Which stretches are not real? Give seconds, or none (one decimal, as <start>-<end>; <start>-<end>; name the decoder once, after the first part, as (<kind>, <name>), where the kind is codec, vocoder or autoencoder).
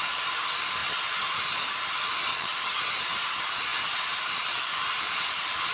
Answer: 2.3-2.8 (vocoder, HiFi-GAN)